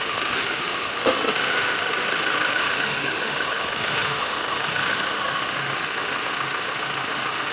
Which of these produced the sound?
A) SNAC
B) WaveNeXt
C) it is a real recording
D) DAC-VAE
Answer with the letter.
D